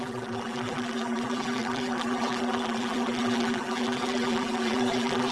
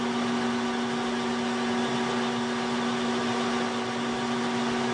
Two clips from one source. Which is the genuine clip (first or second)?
second